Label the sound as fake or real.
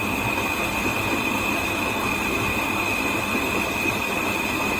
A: real